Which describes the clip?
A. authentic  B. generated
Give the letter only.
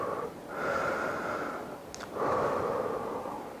A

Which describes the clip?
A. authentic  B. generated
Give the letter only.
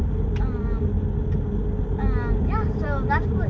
A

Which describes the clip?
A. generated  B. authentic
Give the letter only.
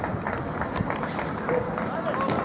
B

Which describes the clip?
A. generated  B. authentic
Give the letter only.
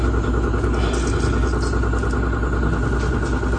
B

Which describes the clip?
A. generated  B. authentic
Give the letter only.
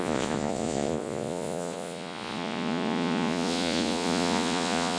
A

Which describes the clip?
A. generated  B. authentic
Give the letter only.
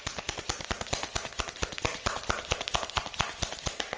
B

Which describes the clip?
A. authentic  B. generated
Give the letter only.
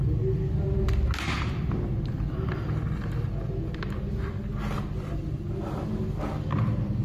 A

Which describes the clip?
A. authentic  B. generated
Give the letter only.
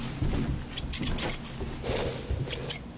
A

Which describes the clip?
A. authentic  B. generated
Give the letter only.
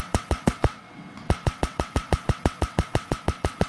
B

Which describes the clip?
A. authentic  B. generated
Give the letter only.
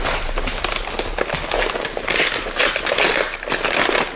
A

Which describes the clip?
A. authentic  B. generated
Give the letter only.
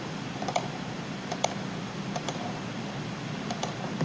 B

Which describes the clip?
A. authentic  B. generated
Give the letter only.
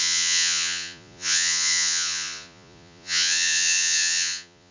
B